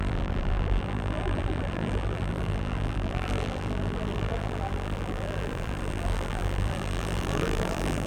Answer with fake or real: fake